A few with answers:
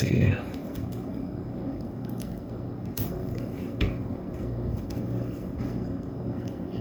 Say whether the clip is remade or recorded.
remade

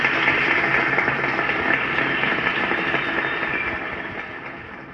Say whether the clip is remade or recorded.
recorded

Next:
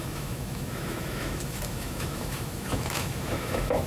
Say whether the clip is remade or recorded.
remade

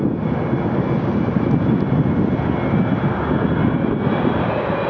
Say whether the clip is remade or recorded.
recorded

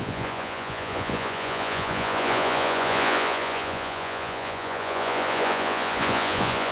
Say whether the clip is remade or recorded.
remade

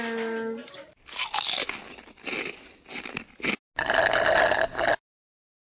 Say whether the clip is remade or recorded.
recorded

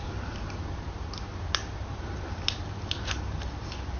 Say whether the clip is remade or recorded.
recorded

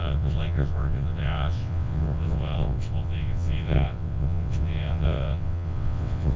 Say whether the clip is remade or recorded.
remade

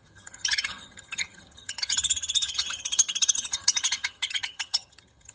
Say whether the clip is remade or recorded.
remade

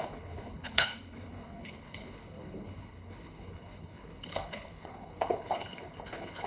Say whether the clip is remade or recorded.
remade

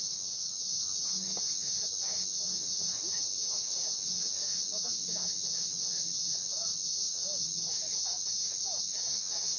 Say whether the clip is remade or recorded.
remade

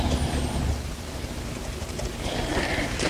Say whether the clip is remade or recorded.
remade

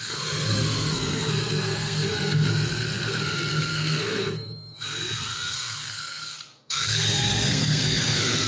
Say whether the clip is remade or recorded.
remade